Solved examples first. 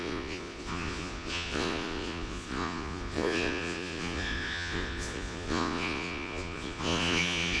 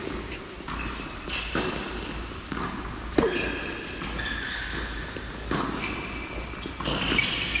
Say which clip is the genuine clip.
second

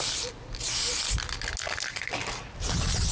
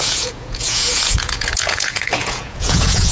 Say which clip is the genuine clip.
first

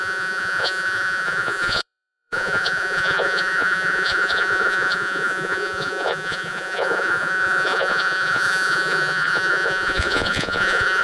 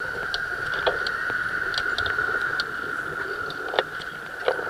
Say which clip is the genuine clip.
second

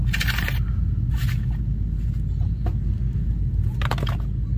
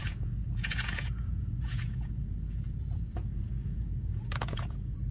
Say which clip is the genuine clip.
first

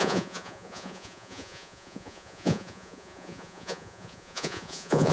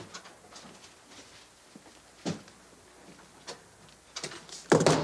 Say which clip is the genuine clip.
second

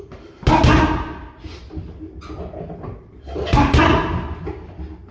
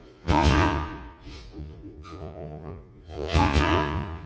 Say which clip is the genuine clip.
first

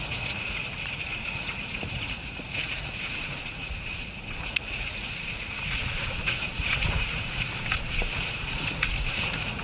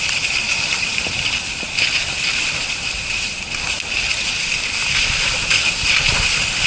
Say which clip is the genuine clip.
second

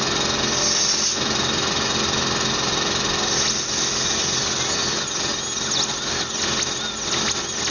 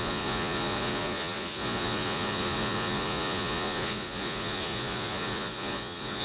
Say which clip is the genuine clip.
first